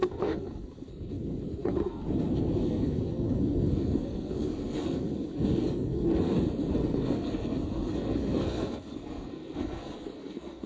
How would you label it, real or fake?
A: fake